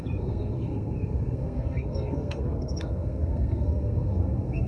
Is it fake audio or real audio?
fake